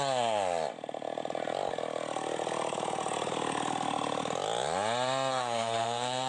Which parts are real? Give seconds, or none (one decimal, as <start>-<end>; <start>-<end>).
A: 0.0-5.3